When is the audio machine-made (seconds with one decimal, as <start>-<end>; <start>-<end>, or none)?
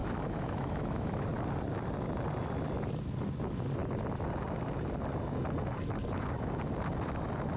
0.0-1.3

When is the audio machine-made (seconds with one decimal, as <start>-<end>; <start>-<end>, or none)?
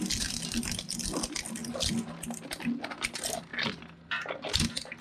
none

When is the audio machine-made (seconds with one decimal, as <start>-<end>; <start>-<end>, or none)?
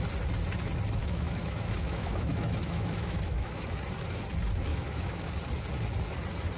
1.0-3.7; 4.7-5.3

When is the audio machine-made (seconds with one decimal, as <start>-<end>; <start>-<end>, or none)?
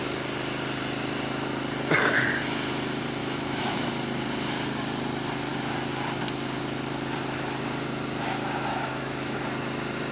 3.2-3.9; 8.7-9.4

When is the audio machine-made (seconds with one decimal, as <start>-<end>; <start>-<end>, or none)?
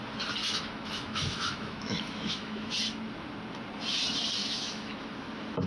0.4-2.7; 4.4-5.1